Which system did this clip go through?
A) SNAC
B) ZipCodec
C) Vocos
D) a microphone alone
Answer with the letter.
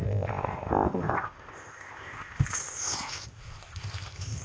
B